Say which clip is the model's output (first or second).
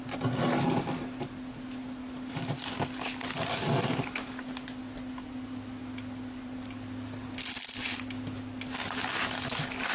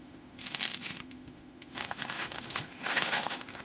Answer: second